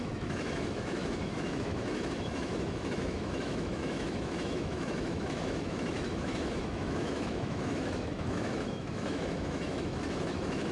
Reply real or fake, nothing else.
fake